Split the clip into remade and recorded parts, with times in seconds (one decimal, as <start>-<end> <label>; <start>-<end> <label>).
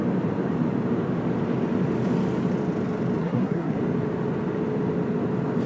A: 0.0-3.2 recorded; 3.2-3.8 remade; 3.8-5.7 recorded